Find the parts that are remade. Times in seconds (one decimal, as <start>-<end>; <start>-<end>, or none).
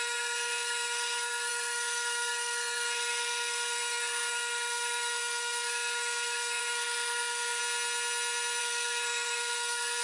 0.0-7.6; 8.6-10.0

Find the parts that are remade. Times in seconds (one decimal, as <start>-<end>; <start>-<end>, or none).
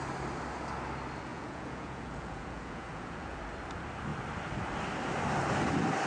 1.3-3.4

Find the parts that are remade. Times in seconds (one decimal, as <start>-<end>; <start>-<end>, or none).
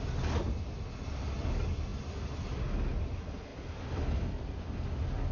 none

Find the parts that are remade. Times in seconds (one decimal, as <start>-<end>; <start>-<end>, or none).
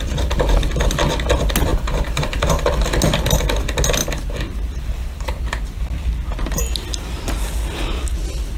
1.7-2.6; 4.0-5.8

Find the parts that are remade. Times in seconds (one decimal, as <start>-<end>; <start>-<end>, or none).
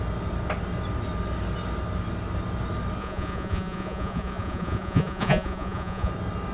3.0-6.1